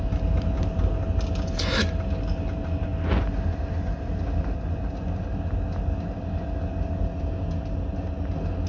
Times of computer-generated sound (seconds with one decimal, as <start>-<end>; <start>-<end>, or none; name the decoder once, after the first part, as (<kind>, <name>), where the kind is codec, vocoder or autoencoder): none